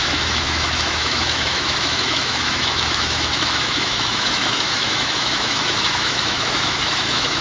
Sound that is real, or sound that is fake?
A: fake